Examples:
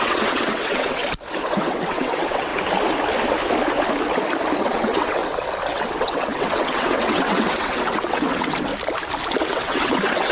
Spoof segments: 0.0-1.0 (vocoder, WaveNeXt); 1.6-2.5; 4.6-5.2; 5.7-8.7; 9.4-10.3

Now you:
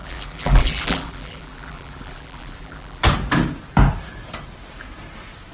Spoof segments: 0.0-3.0 (vocoder, BigVGAN v2)

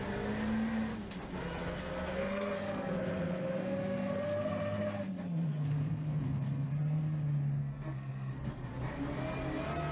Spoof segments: 1.6-6.7 (codec, SNAC); 7.6-8.7

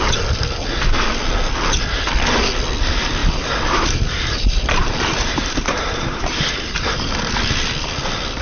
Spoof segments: 3.2-7.3 (vocoder, BigVGAN v2)

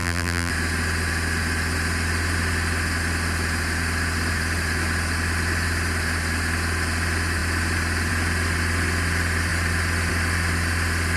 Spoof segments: 0.0-0.5 (vocoder, BigVGAN v2)

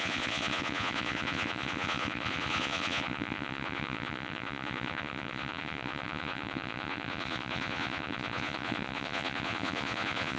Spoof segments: 0.0-10.4 (vocoder, Vocos)

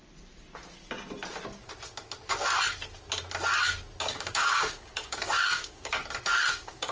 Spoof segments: 4.0-6.0 (codec, DAC); 6.5-6.9